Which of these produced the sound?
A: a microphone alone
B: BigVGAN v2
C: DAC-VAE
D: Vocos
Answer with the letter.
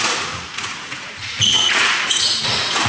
D